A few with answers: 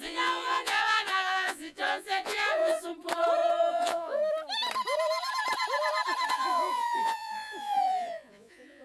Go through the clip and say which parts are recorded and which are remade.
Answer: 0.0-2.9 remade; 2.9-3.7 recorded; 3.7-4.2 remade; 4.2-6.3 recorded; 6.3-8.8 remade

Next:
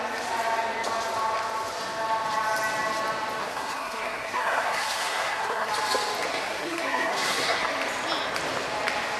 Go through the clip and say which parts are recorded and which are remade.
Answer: 0.0-3.4 recorded; 3.4-5.7 remade; 5.7-6.3 recorded; 6.3-7.6 remade; 7.6-9.2 recorded

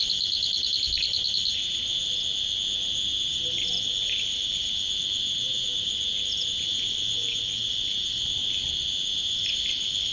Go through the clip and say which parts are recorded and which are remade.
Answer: 0.0-10.1 recorded

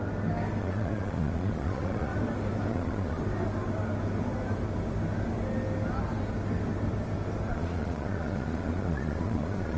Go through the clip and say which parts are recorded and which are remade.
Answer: 0.0-0.6 recorded; 0.6-2.1 remade; 2.1-2.7 recorded; 2.7-3.2 remade; 3.2-7.5 recorded; 7.5-9.8 remade